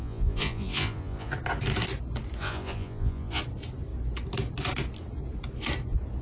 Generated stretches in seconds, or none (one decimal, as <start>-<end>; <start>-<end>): 0.0-1.3; 2.4-3.4